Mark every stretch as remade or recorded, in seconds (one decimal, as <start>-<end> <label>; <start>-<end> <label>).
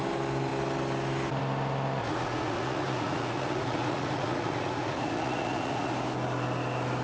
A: 0.0-2.0 recorded; 2.0-5.9 remade; 5.9-7.0 recorded